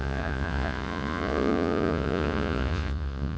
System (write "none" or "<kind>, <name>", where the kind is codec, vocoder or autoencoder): vocoder, Vocos